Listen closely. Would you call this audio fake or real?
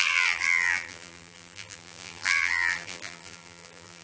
fake